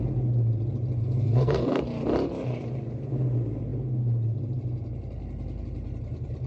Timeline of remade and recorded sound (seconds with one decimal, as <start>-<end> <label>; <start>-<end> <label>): 0.0-1.0 recorded; 1.0-1.8 remade; 1.8-6.5 recorded